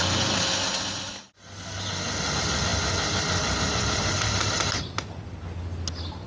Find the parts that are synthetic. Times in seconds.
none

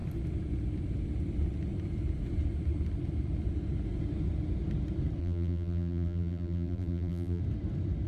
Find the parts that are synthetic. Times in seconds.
5.2-7.4 (vocoder, BigVGAN v2)

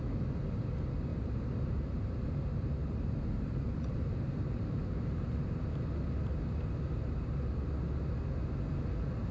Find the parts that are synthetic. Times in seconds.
1.1-2.4 (vocoder, BigVGAN v2); 2.8-5.7